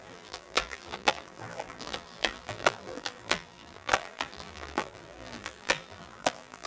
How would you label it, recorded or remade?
remade